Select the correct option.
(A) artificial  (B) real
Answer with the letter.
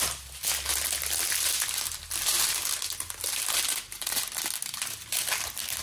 B